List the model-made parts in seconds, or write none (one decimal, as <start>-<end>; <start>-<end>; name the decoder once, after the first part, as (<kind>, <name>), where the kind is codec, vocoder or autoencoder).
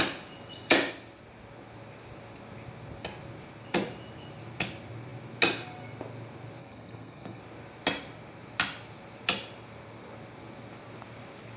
6.6-7.4 (codec, SNAC)